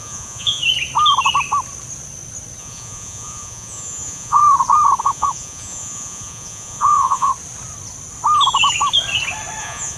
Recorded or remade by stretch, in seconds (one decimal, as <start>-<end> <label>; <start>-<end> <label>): 0.0-0.6 remade; 0.6-2.6 recorded; 2.6-4.4 remade; 4.4-5.0 recorded; 5.0-7.3 remade; 7.3-9.6 recorded; 9.6-10.0 remade